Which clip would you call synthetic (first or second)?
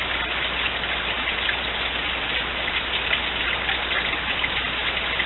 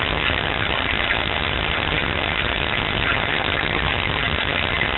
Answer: second